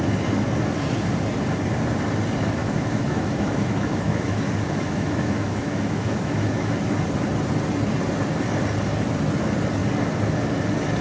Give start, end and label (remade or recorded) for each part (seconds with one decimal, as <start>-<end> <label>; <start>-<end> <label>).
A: 0.0-2.6 recorded; 2.6-6.7 remade; 6.7-11.0 recorded